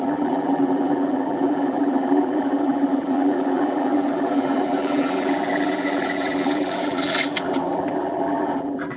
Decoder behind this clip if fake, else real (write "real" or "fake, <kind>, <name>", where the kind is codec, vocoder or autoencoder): fake, vocoder, BigVGAN v2